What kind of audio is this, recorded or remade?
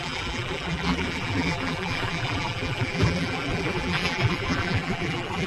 remade